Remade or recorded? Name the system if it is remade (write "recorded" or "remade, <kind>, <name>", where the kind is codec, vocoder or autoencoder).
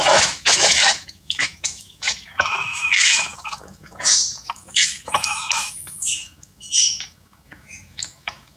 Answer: remade, autoencoder, DAC-VAE